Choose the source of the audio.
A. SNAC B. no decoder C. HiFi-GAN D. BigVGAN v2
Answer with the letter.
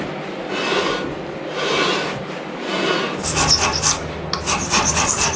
B